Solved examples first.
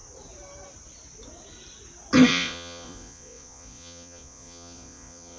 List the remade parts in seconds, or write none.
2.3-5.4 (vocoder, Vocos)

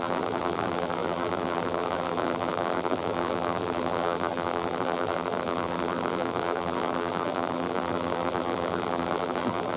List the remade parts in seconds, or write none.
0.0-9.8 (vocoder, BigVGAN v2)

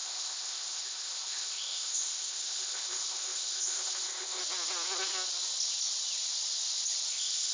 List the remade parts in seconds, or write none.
0.0-4.4 (codec, ZipCodec); 7.1-7.5

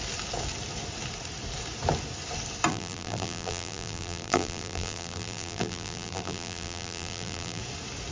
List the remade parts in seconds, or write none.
2.7-7.6 (vocoder, BigVGAN v2)

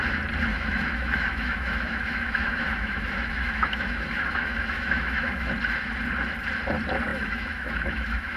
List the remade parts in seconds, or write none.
0.5-5.5 (autoencoder, DAC-VAE); 7.1-8.4

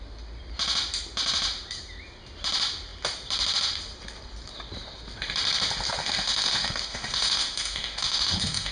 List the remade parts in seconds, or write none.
6.0-8.7 (autoencoder, DAC-VAE)

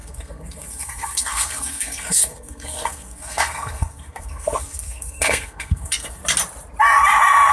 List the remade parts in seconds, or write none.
0.0-6.2 (codec, SNAC)

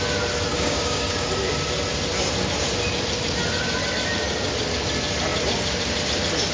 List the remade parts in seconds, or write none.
0.5-1.3 (codec, DAC)